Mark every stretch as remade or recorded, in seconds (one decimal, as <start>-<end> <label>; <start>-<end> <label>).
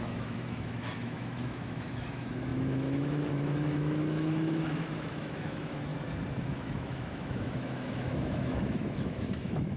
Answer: 0.0-5.9 remade; 5.9-6.4 recorded; 6.4-9.8 remade